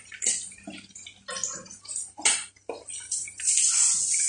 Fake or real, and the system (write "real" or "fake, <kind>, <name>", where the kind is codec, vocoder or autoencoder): real